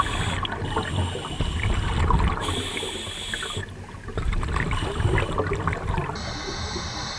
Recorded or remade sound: recorded